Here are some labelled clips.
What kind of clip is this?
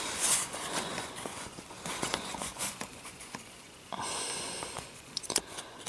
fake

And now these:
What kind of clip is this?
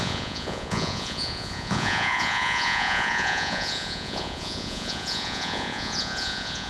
fake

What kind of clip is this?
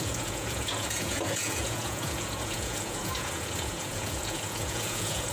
fake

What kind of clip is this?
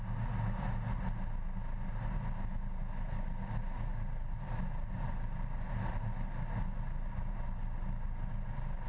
real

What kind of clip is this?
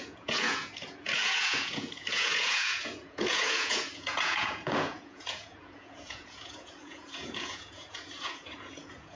fake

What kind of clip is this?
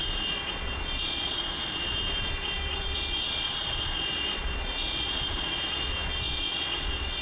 fake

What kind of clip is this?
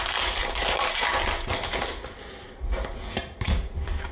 real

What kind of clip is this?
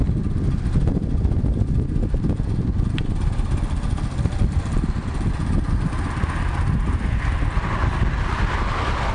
real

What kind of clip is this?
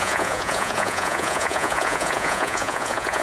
fake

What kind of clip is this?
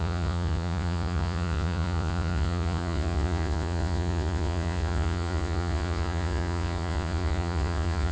fake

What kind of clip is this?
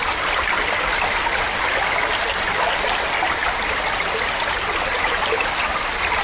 real